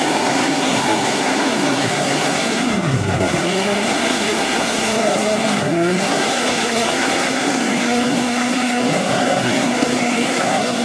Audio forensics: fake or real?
fake